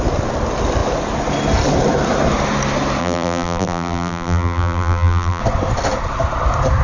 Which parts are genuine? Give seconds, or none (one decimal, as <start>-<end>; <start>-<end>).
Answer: 0.0-3.0; 5.4-6.8